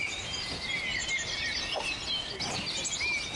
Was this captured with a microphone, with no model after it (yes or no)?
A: yes